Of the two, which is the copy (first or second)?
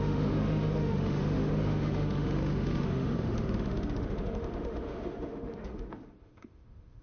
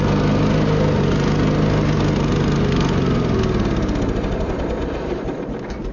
first